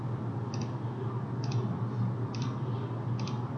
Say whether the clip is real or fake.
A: real